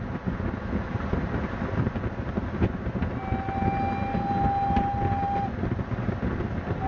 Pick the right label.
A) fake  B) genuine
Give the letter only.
B